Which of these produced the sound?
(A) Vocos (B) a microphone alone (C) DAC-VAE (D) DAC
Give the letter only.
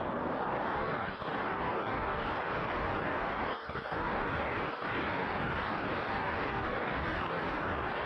D